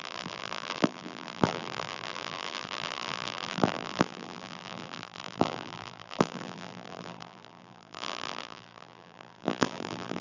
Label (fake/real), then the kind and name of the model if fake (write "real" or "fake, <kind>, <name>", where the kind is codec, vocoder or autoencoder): fake, vocoder, BigVGAN v2